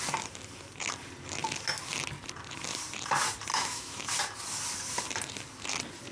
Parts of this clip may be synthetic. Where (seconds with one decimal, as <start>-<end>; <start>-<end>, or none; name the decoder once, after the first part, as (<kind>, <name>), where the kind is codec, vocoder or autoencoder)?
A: 3.5-4.1 (autoencoder, DAC-VAE)